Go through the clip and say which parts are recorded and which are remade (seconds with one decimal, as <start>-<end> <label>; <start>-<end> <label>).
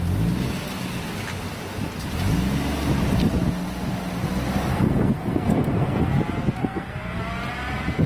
0.0-4.7 recorded; 4.7-6.1 remade; 6.1-6.6 recorded; 6.6-7.2 remade; 7.2-8.1 recorded